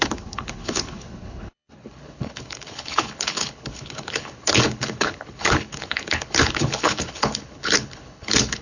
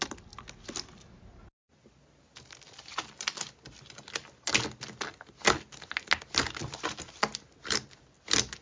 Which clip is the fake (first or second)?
first